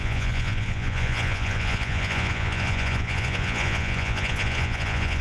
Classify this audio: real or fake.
fake